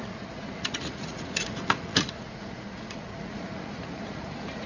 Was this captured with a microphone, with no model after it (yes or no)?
no